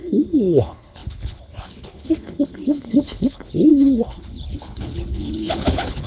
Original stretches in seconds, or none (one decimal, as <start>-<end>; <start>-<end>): none